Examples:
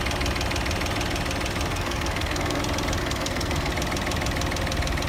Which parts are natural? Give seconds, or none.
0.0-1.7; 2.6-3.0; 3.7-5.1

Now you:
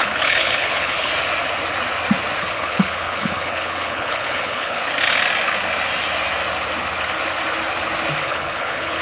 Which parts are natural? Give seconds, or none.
1.1-2.4; 4.8-8.2